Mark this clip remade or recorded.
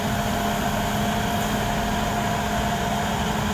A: recorded